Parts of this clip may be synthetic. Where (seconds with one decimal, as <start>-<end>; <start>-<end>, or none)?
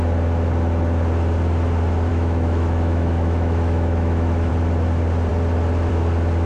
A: 2.1-4.5